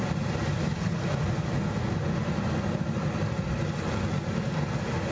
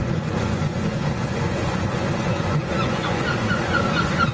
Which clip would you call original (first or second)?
first